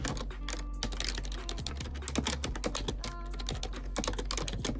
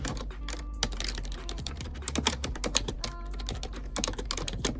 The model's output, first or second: second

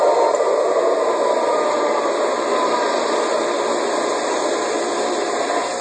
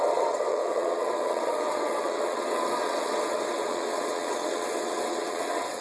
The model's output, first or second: second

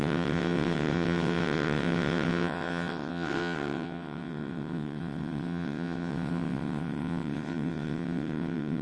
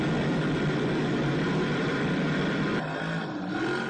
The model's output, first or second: first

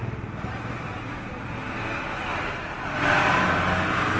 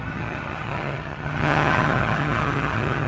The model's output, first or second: second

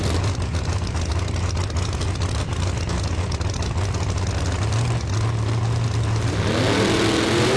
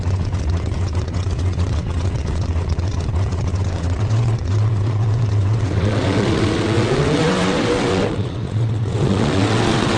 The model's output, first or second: second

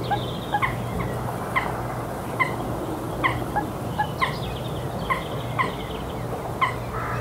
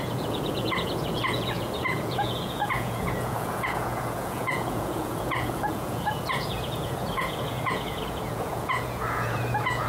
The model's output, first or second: second